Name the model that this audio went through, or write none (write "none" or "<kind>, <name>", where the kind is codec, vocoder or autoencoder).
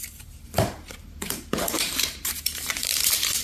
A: vocoder, BigVGAN v2